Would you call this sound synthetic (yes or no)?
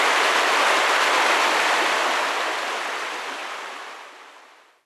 no